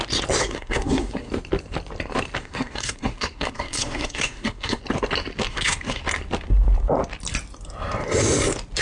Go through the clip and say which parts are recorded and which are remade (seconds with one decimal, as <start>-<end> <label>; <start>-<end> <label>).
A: 0.0-0.4 recorded; 0.4-1.3 remade; 1.3-2.4 recorded; 2.4-4.8 remade; 4.8-5.5 recorded; 5.5-6.0 remade; 6.0-8.8 recorded